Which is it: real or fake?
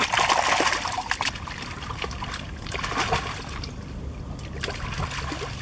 real